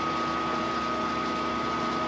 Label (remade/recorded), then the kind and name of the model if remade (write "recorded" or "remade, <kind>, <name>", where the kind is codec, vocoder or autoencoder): recorded